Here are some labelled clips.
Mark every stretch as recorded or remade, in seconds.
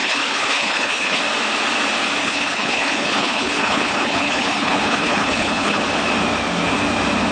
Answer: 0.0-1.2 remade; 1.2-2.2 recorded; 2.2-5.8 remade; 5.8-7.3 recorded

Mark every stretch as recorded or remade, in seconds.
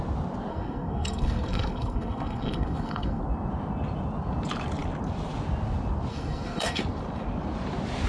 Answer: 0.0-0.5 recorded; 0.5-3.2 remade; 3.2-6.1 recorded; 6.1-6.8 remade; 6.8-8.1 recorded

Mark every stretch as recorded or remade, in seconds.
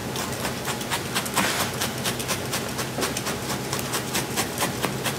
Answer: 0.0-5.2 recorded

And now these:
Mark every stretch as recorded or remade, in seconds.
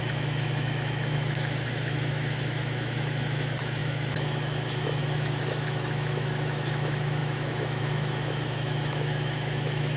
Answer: 0.0-10.0 remade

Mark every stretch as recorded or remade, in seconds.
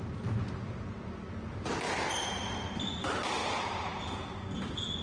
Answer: 0.0-2.4 recorded; 2.4-3.0 remade; 3.0-5.0 recorded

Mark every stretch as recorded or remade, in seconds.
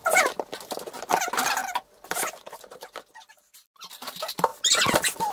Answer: 0.0-5.3 recorded